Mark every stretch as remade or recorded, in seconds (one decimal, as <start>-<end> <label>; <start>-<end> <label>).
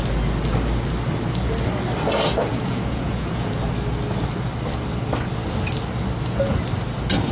0.0-2.5 recorded; 2.5-3.6 remade; 3.6-7.3 recorded